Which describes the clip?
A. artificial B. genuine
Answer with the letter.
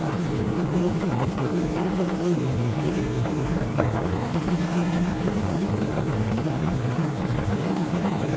A